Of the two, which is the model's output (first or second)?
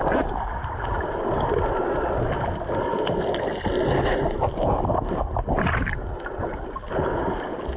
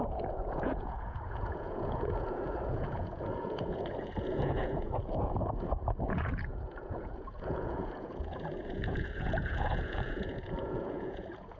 second